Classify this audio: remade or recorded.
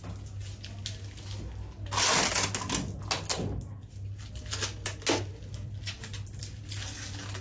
recorded